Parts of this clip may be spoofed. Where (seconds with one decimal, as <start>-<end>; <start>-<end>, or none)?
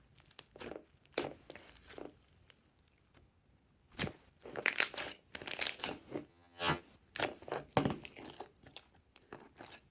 6.3-6.8